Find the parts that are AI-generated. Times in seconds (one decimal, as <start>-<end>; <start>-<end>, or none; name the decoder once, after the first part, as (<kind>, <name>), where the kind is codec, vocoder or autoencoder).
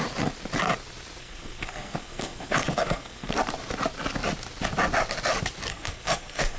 1.2-3.3 (codec, SNAC); 5.7-6.6